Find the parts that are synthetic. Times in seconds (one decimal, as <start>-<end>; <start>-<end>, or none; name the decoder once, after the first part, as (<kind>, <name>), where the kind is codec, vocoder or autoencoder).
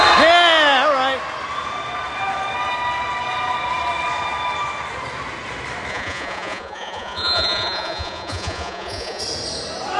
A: 5.9-9.2 (vocoder, Vocos)